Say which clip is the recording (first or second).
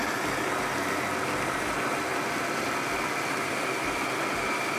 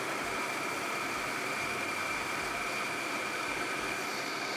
first